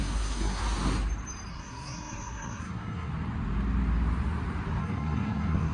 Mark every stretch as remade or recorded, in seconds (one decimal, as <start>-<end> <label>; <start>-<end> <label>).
0.0-0.6 remade; 0.6-1.5 recorded; 1.5-3.1 remade; 3.1-4.8 recorded; 4.8-5.7 remade